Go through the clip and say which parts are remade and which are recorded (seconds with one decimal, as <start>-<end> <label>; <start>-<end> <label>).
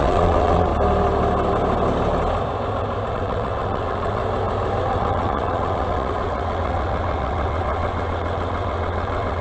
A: 0.0-0.7 remade; 0.7-3.1 recorded; 3.1-4.2 remade; 4.2-4.8 recorded; 4.8-9.4 remade